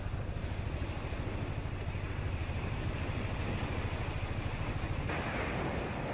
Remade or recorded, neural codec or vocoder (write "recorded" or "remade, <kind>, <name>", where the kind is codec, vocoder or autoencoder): recorded